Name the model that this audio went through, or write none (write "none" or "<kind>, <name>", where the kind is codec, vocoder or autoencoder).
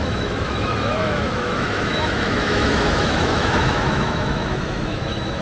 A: autoencoder, DAC-VAE